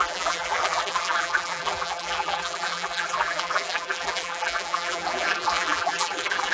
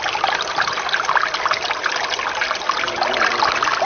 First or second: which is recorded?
second